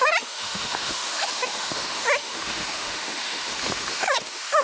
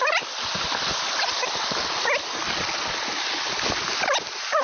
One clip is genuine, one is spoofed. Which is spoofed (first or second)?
first